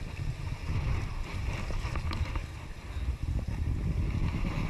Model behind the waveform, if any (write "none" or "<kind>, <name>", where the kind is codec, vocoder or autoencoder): none